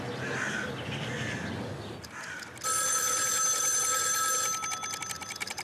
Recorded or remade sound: recorded